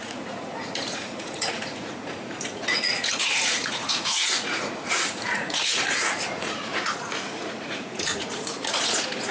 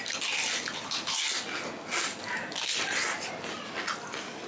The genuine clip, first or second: second